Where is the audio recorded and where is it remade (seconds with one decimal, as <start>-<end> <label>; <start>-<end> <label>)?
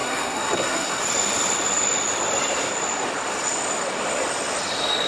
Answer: 0.0-1.0 remade; 1.0-5.1 recorded